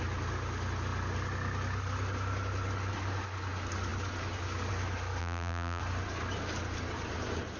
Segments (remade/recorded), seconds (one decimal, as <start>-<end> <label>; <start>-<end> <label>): 0.0-5.2 recorded; 5.2-5.8 remade; 5.8-7.6 recorded